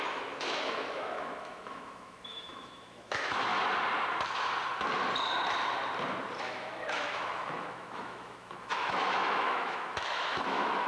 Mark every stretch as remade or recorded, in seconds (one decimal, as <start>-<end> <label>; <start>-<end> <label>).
0.0-3.5 remade; 3.5-6.4 recorded; 6.4-10.9 remade